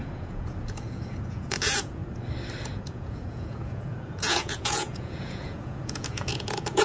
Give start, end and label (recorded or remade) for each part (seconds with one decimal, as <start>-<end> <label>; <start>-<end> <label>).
0.0-2.0 remade; 2.0-2.7 recorded; 2.7-6.8 remade